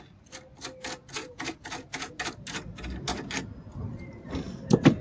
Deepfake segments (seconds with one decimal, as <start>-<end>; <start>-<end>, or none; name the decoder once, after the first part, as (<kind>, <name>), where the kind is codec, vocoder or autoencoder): 1.2-2.2 (vocoder, Vocos)

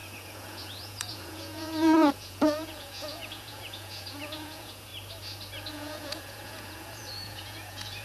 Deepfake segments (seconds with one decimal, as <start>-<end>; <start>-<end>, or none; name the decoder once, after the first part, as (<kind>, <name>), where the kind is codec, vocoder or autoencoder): 0.0-4.9 (vocoder, Vocos); 5.7-8.0